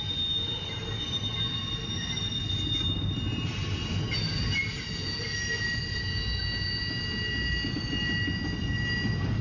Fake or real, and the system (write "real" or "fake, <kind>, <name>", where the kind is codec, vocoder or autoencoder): real